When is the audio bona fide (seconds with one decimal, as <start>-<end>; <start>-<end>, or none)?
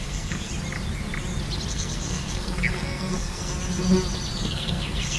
0.5-1.7; 3.5-4.4